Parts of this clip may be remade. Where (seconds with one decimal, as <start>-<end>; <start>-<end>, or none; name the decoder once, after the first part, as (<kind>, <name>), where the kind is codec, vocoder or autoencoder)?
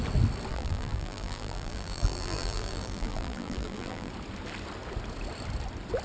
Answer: 0.5-4.1 (vocoder, BigVGAN v2)